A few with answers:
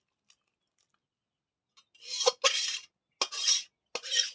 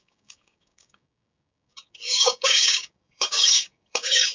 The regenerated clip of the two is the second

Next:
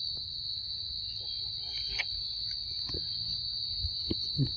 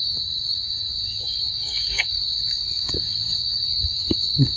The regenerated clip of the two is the second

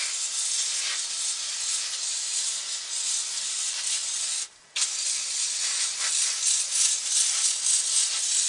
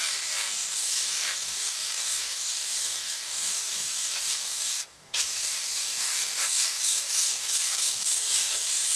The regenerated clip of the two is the second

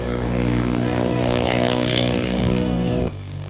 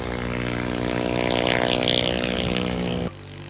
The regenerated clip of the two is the first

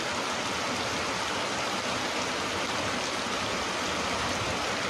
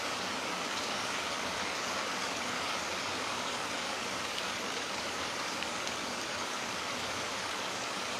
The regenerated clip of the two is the second